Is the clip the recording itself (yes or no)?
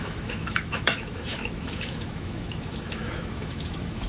no